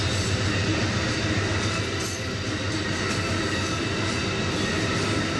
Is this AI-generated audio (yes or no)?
no